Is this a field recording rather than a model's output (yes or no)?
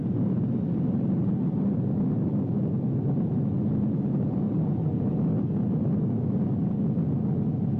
yes